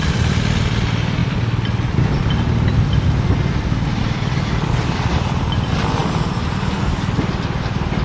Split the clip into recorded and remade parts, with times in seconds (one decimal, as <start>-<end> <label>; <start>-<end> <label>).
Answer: 0.0-8.0 recorded